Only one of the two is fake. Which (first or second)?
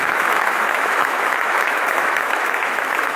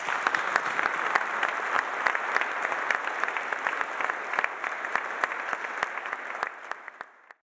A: first